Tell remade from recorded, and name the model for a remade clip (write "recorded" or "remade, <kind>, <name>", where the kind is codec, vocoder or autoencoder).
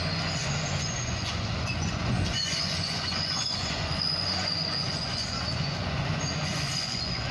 remade, vocoder, Vocos